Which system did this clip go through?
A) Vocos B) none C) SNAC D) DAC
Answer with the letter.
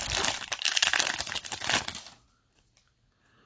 B